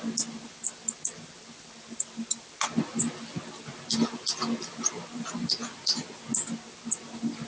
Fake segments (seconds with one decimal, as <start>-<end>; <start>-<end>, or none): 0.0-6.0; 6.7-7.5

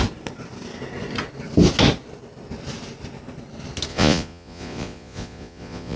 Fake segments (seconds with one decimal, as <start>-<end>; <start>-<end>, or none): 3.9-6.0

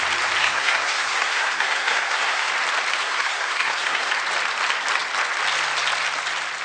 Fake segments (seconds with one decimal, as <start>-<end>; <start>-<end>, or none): 0.4-2.5; 3.0-4.1

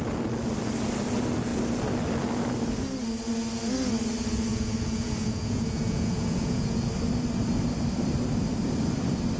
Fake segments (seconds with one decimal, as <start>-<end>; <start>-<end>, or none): 4.5-6.9

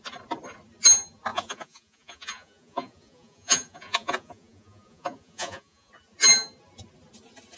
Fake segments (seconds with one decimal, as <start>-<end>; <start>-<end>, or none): 1.3-5.9

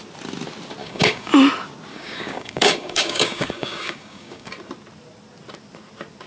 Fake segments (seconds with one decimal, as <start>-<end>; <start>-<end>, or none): 0.8-1.3; 1.9-4.5

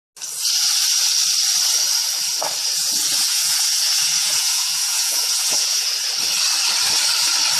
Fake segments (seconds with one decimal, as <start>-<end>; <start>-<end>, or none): 2.6-5.9

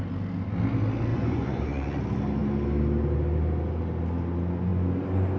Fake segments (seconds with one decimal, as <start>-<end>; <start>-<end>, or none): 1.1-2.0